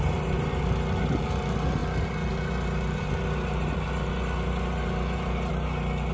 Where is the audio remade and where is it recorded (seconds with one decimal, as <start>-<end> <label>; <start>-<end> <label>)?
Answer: 0.0-6.1 recorded